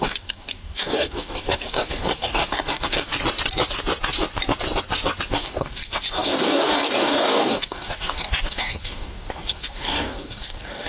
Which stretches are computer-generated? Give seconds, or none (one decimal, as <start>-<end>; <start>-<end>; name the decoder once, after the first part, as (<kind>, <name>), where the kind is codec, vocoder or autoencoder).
0.0-3.1 (codec, DAC); 5.3-10.9